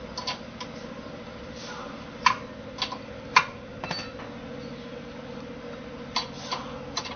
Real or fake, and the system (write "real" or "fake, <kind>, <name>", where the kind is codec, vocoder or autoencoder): real